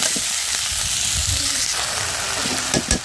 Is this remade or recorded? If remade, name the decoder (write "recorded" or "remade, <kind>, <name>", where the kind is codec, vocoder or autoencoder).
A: recorded